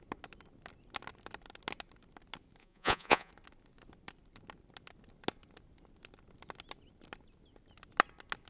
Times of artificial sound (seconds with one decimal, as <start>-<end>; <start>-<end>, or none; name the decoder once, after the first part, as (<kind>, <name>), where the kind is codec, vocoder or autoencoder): 2.6-3.3 (vocoder, Vocos)